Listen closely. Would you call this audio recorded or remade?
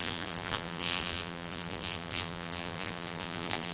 remade